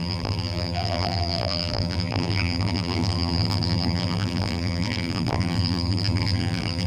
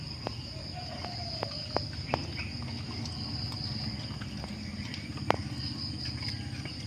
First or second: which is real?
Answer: second